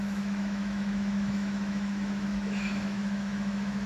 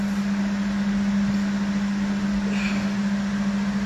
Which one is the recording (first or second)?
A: second